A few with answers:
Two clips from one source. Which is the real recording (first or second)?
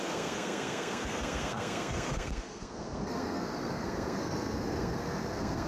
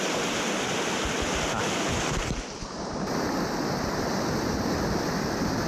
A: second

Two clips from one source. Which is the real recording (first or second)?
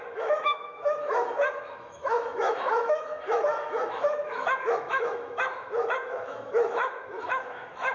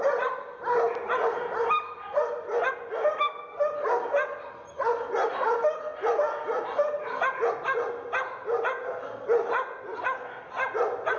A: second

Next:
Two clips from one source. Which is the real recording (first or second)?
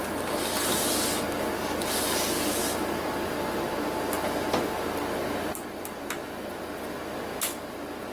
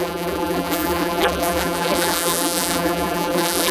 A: first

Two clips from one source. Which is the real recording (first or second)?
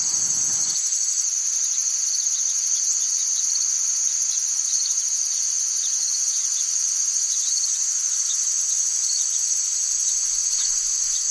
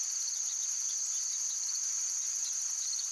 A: second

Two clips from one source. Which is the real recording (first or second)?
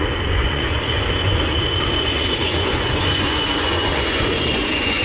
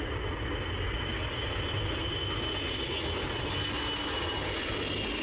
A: second